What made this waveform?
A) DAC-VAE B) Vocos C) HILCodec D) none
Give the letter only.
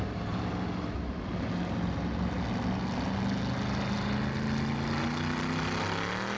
D